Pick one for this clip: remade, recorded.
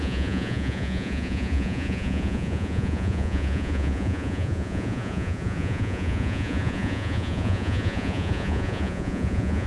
remade